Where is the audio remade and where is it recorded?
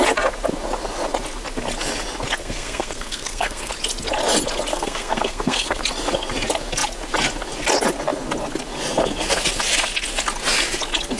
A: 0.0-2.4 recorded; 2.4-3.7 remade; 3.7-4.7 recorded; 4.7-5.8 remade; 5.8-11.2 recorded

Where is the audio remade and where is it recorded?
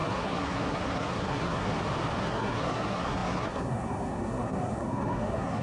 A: 0.0-1.7 remade; 1.7-2.2 recorded; 2.2-5.6 remade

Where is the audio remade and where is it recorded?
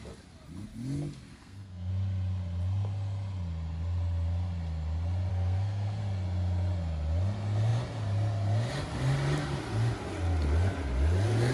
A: 0.0-1.3 recorded; 1.3-1.9 remade; 1.9-5.3 recorded; 5.3-6.0 remade; 6.0-11.5 recorded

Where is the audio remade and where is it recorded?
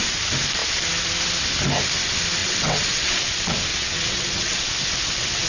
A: 0.0-2.4 recorded; 2.4-3.3 remade; 3.3-3.7 recorded; 3.7-4.6 remade; 4.6-5.5 recorded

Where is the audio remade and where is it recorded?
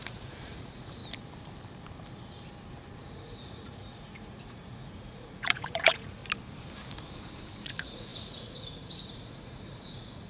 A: 0.0-1.0 remade; 1.0-3.0 recorded; 3.0-6.2 remade; 6.2-7.6 recorded; 7.6-10.3 remade